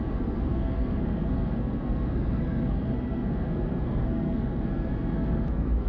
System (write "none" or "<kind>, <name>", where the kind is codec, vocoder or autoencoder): codec, SNAC